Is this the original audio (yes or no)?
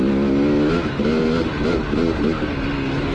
yes